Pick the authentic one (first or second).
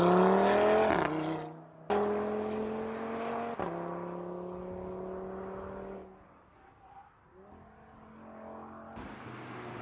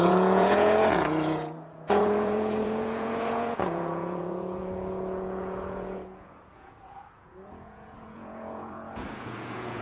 first